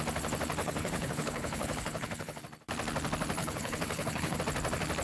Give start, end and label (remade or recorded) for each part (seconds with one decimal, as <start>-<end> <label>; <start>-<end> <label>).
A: 0.0-0.6 recorded; 0.6-2.4 remade; 2.4-3.4 recorded; 3.4-4.4 remade; 4.4-5.0 recorded